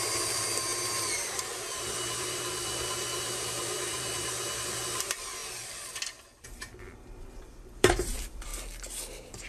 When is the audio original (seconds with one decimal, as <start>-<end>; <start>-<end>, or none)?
5.4-6.8; 8.5-9.1